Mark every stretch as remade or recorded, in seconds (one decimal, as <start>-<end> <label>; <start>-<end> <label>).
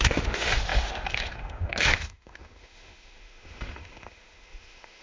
0.0-5.0 remade